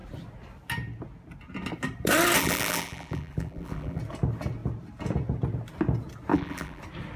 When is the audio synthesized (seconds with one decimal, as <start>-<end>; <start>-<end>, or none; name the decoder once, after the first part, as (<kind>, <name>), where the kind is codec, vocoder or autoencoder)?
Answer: 2.4-4.0 (vocoder, BigVGAN v2); 6.3-6.8